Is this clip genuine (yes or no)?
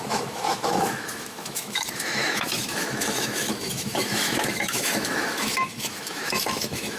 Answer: no